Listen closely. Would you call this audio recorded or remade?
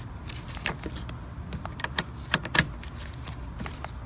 recorded